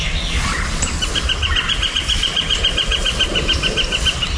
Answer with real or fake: real